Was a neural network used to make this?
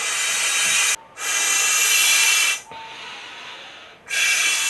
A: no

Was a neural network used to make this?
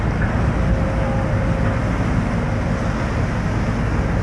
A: no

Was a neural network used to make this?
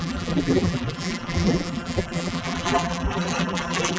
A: yes